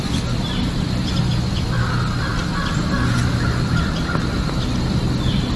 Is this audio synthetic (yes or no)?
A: no